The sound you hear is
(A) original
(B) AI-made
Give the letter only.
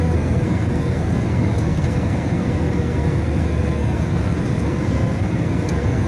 B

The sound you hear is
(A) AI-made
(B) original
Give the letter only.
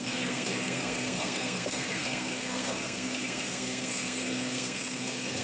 A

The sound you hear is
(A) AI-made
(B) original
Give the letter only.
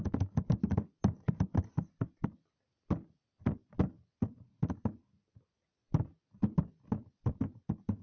B